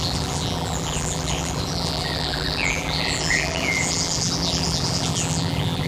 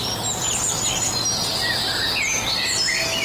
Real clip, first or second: second